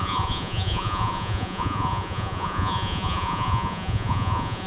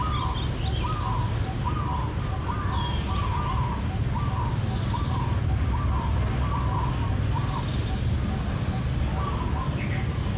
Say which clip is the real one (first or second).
second